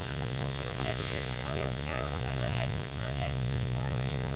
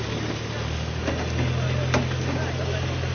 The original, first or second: second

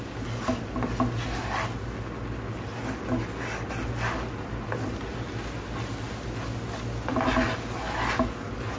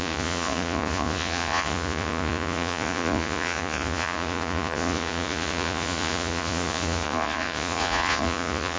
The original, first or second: first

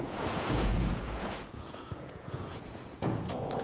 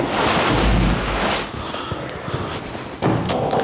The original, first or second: second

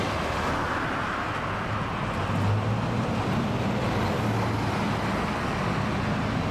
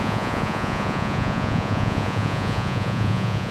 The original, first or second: first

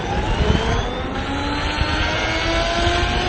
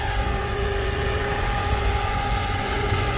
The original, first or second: first